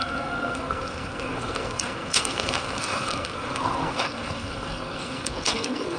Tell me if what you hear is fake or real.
fake